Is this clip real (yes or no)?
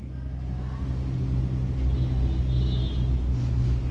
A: yes